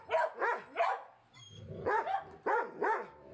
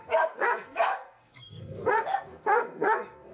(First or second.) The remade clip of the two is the second